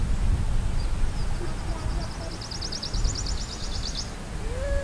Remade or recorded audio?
recorded